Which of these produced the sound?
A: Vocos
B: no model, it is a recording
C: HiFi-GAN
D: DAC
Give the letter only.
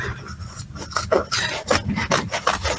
B